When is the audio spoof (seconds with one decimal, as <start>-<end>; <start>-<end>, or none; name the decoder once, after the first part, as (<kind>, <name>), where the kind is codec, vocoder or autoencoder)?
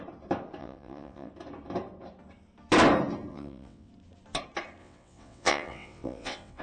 0.6-1.3 (vocoder, WaveNeXt); 3.3-3.9; 4.8-6.6